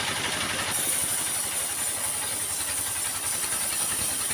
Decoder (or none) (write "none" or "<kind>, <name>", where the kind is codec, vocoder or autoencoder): none